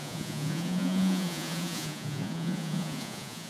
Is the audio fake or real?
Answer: fake